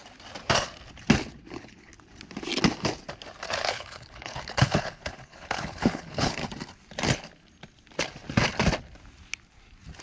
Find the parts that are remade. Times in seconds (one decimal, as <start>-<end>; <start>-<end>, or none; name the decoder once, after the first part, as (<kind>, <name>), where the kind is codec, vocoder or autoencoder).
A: 1.4-1.9 (codec, HILCodec); 3.5-6.4